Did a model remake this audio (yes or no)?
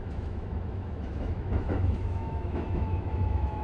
yes